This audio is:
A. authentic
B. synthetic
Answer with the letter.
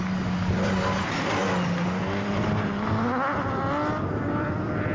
A